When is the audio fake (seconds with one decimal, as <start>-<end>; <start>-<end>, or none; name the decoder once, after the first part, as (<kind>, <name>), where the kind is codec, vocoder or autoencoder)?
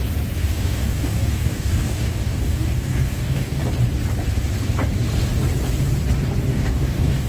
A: 0.4-3.6 (codec, DAC); 6.5-7.3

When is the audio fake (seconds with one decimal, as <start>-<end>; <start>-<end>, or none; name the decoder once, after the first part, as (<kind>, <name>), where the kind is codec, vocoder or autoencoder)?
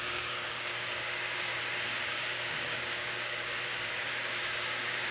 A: 0.0-1.5 (codec, DAC); 2.1-5.1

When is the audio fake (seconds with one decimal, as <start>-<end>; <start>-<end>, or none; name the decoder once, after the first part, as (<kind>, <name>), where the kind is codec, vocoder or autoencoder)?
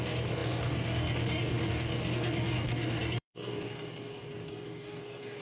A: 0.0-5.4 (codec, DAC)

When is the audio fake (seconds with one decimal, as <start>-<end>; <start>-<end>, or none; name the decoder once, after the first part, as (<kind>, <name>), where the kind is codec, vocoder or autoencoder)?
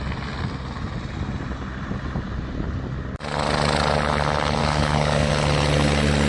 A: 4.6-5.3 (codec, DAC)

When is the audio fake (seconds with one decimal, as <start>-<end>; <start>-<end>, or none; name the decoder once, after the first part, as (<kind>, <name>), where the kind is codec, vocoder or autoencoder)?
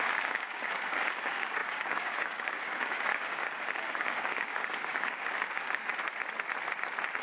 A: 0.0-5.9 (codec, DAC)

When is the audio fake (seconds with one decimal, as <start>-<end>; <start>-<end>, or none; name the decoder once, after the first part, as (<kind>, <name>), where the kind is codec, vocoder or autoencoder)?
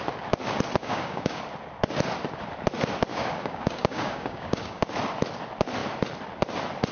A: 0.8-1.4 (codec, DAC); 3.1-4.8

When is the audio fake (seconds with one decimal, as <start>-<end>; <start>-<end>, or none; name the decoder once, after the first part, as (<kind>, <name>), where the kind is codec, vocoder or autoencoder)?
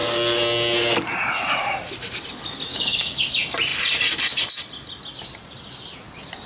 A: 2.7-3.3 (codec, DAC)